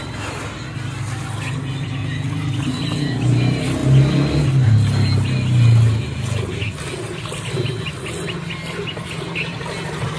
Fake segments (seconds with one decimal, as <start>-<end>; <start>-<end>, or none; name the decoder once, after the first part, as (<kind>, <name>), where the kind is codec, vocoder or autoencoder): none